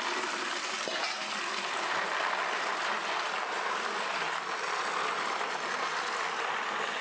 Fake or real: real